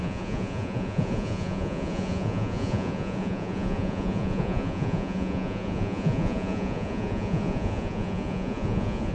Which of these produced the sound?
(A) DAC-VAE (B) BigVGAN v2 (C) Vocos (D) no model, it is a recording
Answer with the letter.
C